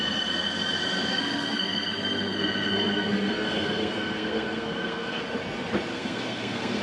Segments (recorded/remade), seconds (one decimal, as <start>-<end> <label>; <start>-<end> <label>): 0.0-1.1 recorded; 1.1-5.2 remade; 5.2-5.9 recorded; 5.9-6.8 remade